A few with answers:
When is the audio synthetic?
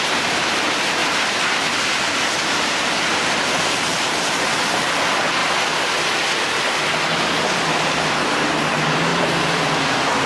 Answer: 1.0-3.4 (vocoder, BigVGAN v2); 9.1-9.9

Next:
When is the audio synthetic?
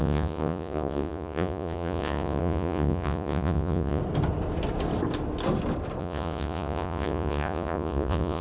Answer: 0.0-4.0 (vocoder, Vocos); 6.0-8.4